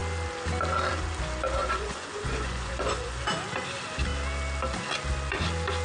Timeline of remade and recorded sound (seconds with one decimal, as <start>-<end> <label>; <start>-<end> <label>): 0.0-1.6 recorded; 1.6-3.2 remade; 3.2-5.8 recorded